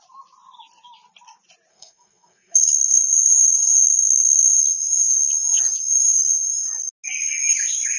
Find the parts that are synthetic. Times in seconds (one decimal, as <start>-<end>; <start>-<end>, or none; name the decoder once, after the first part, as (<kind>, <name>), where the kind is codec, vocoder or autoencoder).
1.7-4.6 (codec, SNAC)